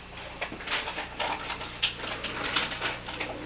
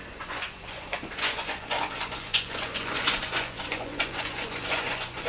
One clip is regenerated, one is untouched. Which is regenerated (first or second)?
second